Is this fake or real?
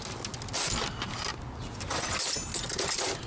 real